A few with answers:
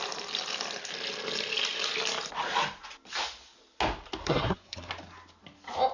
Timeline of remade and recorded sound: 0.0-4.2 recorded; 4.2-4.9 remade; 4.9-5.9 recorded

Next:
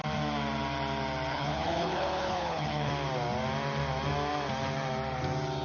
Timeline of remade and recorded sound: 0.0-1.3 recorded; 1.3-2.9 remade; 2.9-5.6 recorded

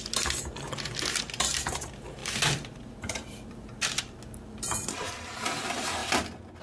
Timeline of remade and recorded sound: 0.0-2.2 recorded; 2.2-5.1 remade; 5.1-6.6 recorded

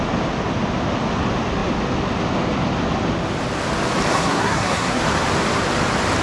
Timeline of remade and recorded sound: 0.0-4.1 recorded; 4.1-5.0 remade; 5.0-6.2 recorded

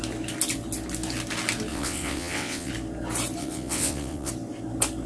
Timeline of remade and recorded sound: 0.0-1.7 recorded; 1.7-2.7 remade; 2.7-3.4 recorded; 3.4-4.3 remade; 4.3-5.1 recorded

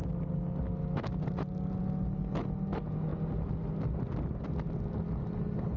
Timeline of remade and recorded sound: 0.0-5.8 recorded

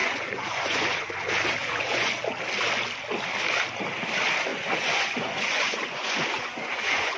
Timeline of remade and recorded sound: 0.0-1.1 remade; 1.1-1.6 recorded; 1.6-2.2 remade; 2.2-4.5 recorded; 4.5-7.2 remade